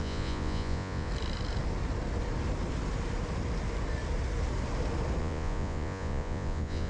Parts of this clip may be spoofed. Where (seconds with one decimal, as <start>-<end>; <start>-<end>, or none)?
0.0-1.1; 5.2-6.9

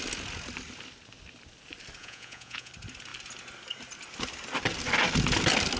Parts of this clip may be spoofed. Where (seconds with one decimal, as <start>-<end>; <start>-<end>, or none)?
2.0-2.7

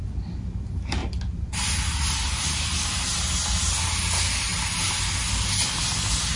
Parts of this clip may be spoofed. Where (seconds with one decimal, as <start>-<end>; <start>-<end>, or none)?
none

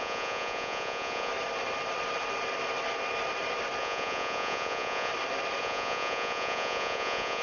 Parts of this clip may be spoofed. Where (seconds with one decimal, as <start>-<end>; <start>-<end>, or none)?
0.0-1.3; 3.8-5.1; 5.6-7.4